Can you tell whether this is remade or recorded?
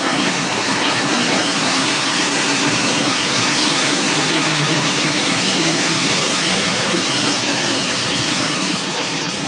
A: remade